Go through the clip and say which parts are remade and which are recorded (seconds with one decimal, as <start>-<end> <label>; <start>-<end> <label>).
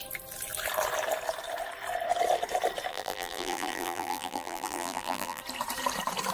0.0-2.9 recorded; 2.9-5.4 remade; 5.4-6.3 recorded